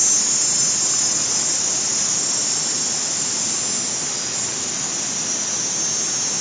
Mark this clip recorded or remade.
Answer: recorded